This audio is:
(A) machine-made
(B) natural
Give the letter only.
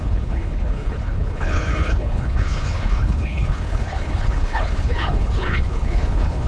A